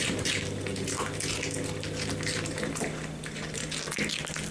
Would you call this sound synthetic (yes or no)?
no